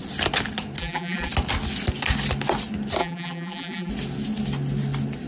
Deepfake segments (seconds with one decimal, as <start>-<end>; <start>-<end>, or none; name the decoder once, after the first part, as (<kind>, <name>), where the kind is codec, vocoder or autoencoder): 0.8-1.3 (vocoder, BigVGAN v2); 3.0-3.9